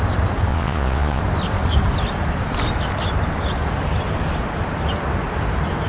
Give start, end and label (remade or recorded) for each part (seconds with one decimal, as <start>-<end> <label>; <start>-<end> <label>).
0.0-0.5 recorded; 0.5-1.2 remade; 1.2-5.9 recorded